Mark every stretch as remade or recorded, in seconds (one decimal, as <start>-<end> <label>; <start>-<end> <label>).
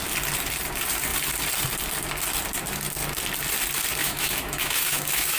0.0-4.0 recorded; 4.0-5.4 remade